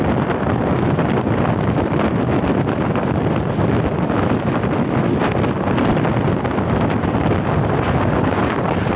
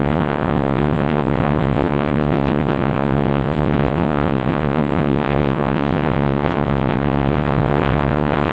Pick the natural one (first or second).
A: first